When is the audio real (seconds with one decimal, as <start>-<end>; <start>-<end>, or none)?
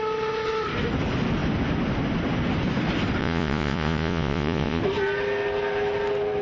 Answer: 0.0-3.2; 4.8-6.4